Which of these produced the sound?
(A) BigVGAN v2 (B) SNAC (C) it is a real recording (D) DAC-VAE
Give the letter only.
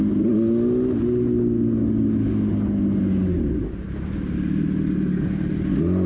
C